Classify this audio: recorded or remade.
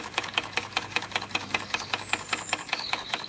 remade